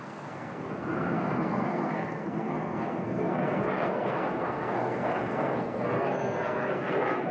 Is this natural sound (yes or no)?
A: no